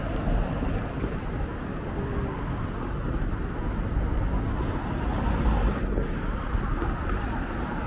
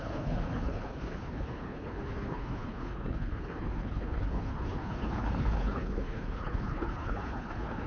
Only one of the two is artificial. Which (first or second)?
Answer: second